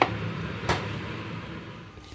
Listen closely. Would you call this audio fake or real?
real